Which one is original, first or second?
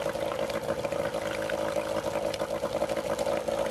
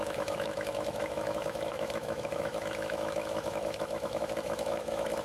first